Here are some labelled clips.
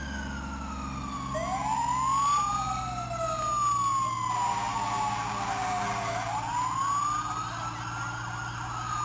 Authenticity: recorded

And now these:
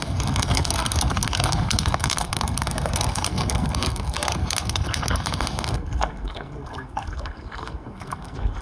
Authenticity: remade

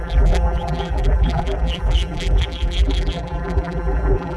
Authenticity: remade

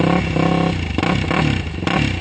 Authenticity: recorded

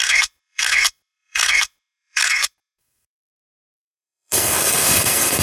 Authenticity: remade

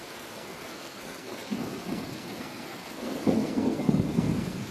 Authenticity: remade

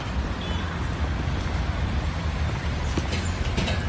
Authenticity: recorded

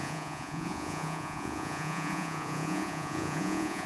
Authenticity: remade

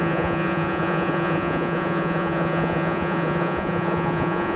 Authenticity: remade